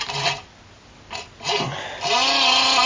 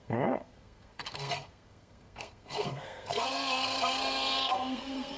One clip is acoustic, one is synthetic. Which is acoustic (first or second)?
first